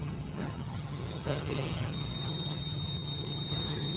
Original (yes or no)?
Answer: no